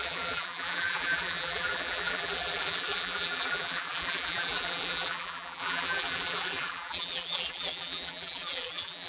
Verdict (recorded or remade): remade